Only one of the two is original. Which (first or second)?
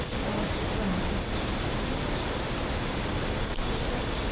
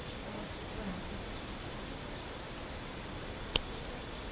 first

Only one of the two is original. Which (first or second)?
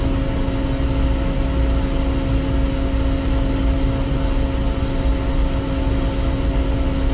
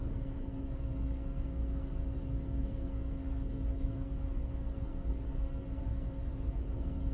first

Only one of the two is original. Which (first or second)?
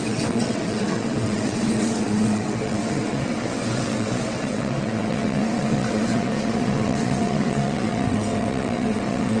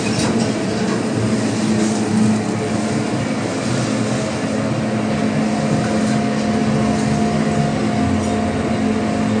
second